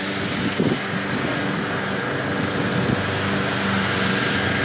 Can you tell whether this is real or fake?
real